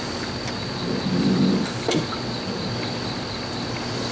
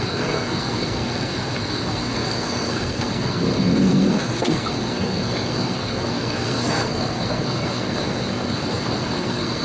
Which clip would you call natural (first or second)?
first